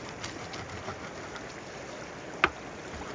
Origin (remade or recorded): recorded